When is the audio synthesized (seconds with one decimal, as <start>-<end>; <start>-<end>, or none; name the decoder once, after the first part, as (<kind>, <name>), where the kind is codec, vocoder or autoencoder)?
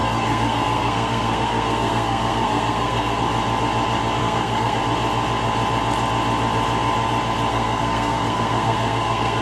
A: 0.0-3.2 (codec, SNAC); 4.2-4.8; 7.5-9.4